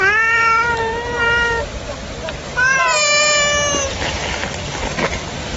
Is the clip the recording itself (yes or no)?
yes